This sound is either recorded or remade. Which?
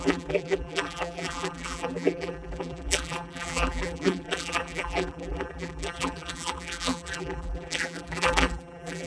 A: remade